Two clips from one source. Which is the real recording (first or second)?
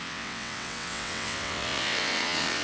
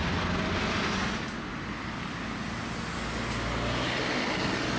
second